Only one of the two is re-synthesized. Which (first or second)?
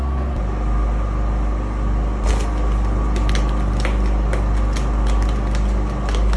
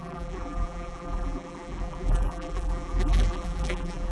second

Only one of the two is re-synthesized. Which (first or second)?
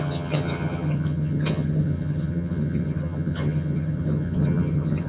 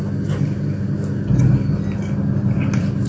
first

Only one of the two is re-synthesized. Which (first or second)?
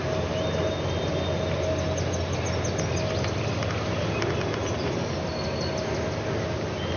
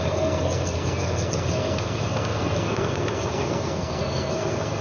second